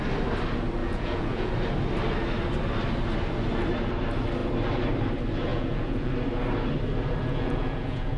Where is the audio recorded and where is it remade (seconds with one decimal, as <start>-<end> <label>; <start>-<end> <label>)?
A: 0.0-0.8 recorded; 0.8-1.5 remade; 1.5-5.5 recorded; 5.5-6.1 remade; 6.1-7.2 recorded; 7.2-8.2 remade